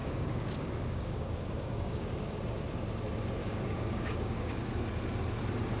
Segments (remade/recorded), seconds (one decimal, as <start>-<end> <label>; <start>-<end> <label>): 0.0-2.4 remade; 2.4-3.4 recorded; 3.4-4.7 remade; 4.7-5.8 recorded